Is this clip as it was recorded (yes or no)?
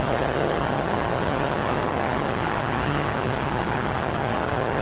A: no